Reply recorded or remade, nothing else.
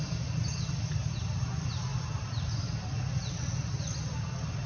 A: recorded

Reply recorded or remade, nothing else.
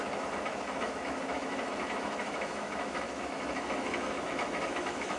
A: remade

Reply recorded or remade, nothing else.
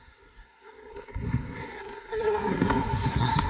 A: remade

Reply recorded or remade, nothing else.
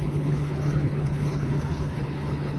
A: remade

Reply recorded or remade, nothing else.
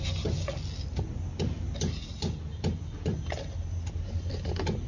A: recorded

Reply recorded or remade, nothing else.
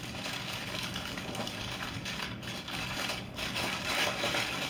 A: remade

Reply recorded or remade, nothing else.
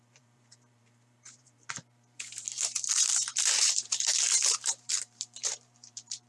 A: remade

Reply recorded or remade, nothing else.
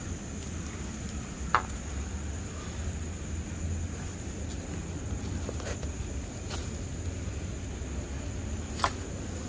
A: recorded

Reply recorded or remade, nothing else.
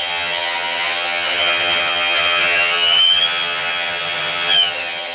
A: remade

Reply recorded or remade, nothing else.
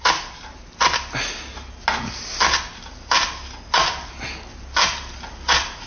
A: recorded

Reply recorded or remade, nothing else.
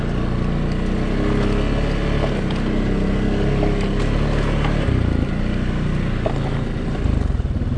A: recorded